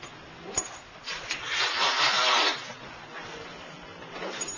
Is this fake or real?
real